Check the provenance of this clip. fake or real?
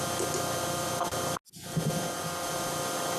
real